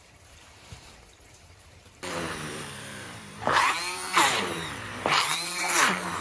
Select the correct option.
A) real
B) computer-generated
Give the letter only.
B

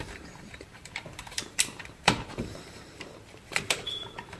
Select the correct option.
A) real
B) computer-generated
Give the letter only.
B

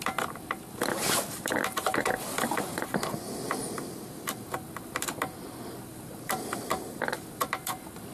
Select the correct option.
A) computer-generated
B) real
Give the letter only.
A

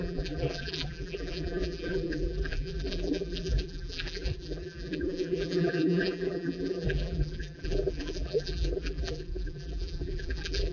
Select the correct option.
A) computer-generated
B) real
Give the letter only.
A